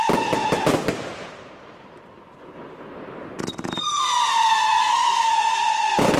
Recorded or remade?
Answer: recorded